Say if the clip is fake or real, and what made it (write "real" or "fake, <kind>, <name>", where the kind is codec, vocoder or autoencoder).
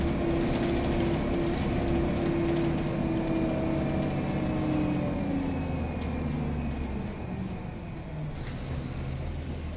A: real